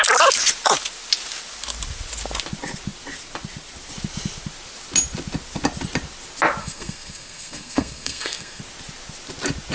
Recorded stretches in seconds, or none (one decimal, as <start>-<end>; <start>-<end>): 0.0-6.6; 8.6-9.7